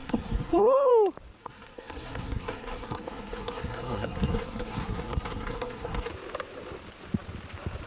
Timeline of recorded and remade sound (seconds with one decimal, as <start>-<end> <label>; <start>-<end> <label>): 0.0-0.9 remade; 0.9-1.4 recorded; 1.4-6.1 remade; 6.1-7.9 recorded